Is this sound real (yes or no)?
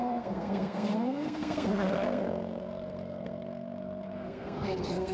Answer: no